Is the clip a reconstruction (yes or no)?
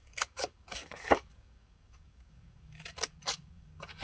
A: yes